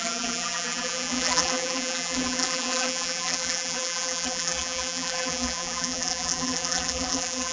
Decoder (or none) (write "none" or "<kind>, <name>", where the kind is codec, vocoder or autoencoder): vocoder, BigVGAN v2